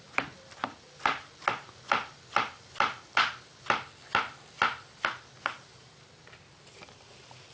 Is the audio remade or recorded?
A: recorded